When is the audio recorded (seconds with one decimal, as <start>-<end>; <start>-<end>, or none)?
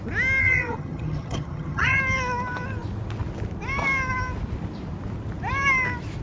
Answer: 0.0-0.4; 2.0-6.2